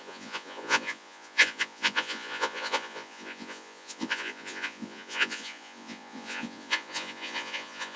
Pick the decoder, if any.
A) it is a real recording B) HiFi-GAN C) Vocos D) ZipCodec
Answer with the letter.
C